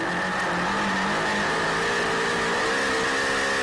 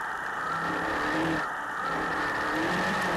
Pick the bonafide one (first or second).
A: first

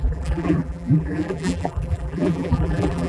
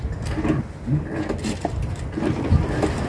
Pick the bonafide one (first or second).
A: second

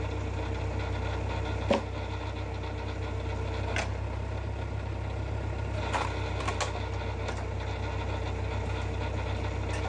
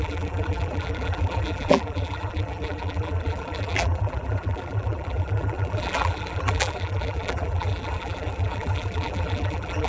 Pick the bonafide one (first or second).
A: first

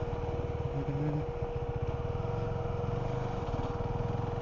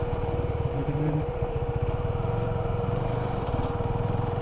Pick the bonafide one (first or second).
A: first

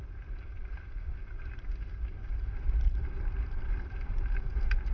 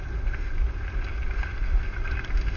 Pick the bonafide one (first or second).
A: second